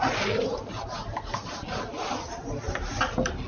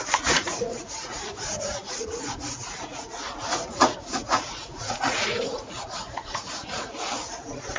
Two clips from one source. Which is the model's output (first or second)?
second